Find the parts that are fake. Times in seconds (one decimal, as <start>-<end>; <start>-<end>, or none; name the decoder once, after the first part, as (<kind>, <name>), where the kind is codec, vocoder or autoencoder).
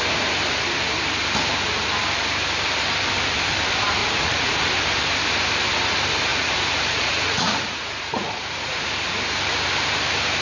4.0-4.5 (vocoder, Vocos); 6.3-8.9